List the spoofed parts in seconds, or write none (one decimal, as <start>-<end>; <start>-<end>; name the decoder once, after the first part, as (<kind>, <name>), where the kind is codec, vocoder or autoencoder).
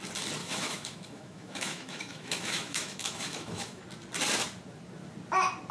0.4-3.8 (autoencoder, DAC-VAE)